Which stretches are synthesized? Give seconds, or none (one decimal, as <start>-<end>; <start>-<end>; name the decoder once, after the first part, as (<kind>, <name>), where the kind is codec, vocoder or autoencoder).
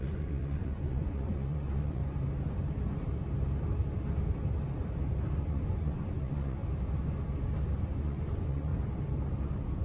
0.0-2.0 (vocoder, Vocos); 5.4-6.6; 8.0-8.7